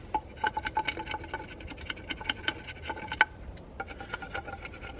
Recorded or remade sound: recorded